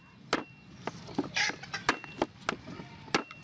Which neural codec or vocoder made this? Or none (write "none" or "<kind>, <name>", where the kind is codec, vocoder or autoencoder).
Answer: none